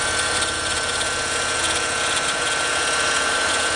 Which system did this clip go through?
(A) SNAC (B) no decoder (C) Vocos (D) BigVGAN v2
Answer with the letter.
C